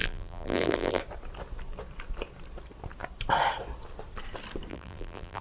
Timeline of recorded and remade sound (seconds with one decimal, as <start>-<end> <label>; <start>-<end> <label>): 0.0-1.0 remade; 1.0-4.7 recorded; 4.7-5.4 remade